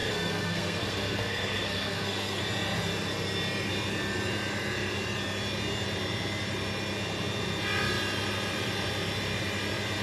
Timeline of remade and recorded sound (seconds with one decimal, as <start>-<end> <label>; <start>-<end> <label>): 0.0-2.4 remade; 2.4-10.0 recorded